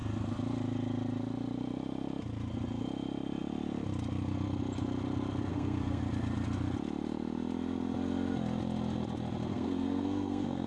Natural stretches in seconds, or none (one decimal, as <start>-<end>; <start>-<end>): 0.0-5.5; 6.0-9.5

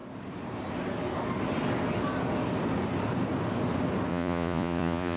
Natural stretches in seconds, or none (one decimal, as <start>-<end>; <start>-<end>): 0.0-4.1

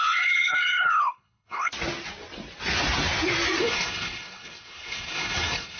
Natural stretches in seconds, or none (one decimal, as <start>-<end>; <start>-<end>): 1.7-3.6

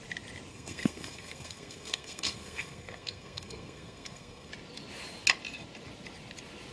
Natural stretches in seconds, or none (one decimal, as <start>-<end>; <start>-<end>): 0.0-0.5; 4.5-6.7

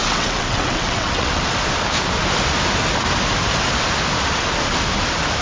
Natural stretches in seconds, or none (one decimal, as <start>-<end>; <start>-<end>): 1.4-5.4